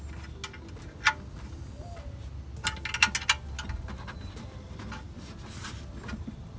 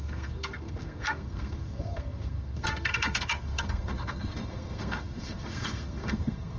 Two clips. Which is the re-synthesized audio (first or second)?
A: second